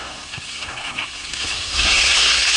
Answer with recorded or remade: remade